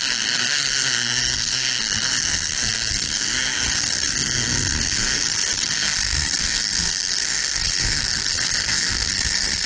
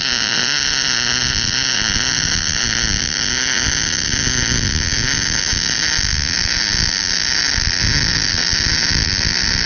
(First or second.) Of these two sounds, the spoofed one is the first